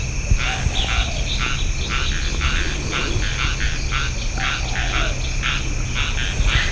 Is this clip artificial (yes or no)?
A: no